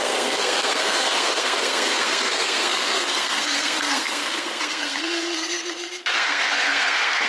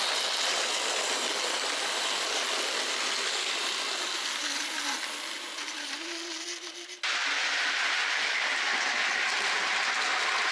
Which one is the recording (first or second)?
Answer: second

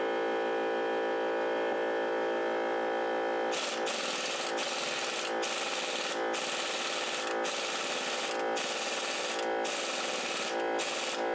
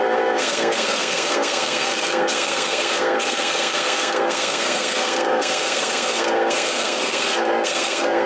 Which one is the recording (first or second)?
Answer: first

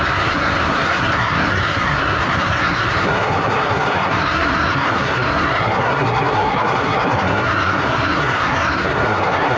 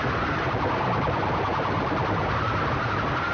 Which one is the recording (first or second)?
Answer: second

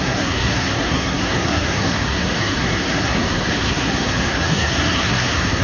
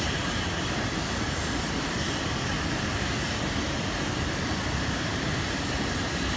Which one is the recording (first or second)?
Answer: second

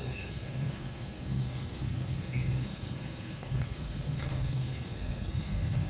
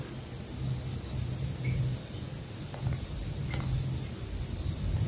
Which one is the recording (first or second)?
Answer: second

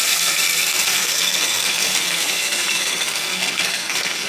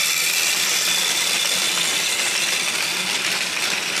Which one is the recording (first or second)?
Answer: second